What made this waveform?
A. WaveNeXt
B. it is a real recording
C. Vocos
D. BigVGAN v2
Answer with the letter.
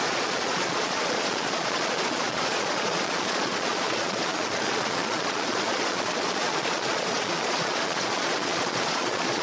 C